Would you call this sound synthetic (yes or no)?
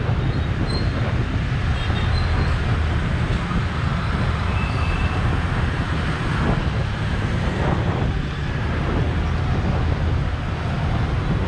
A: no